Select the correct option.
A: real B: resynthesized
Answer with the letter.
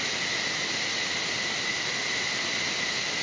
A